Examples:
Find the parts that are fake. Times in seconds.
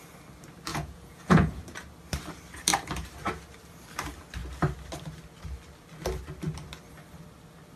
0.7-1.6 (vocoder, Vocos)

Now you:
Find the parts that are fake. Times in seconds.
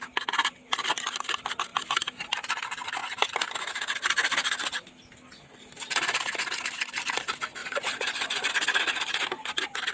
7.6-8.5 (vocoder, Vocos)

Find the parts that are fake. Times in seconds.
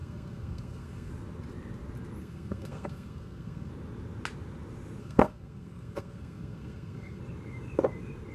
0.0-1.1 (codec, SNAC); 2.2-3.7; 5.0-7.2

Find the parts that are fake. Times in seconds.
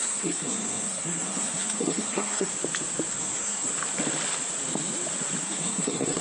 0.0-2.5 (codec, SNAC); 3.1-3.7; 5.4-6.2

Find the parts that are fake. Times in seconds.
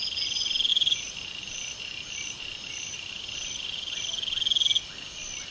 0.7-4.0 (vocoder, BigVGAN v2)